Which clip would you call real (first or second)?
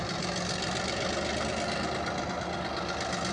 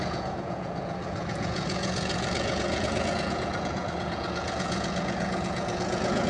first